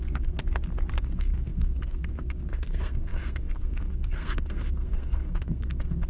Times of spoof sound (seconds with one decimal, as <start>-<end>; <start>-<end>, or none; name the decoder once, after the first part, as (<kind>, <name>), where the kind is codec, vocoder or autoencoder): 0.0-0.4 (codec, SNAC); 1.0-6.1